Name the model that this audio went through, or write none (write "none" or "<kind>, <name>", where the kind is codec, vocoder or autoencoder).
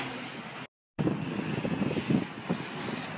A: none